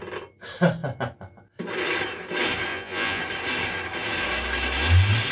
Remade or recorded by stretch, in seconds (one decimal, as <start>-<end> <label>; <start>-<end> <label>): 0.0-2.7 recorded; 2.7-3.2 remade; 3.2-5.3 recorded